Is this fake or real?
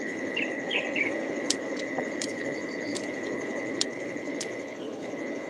fake